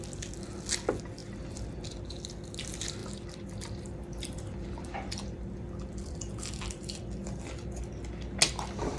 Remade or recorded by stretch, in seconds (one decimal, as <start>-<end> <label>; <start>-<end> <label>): 0.0-1.2 recorded; 1.2-2.1 remade; 2.1-3.0 recorded; 3.0-7.5 remade; 7.5-9.0 recorded